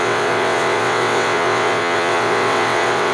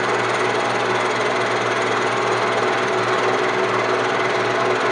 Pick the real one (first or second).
second